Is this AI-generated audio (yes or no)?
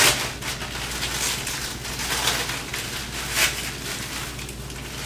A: no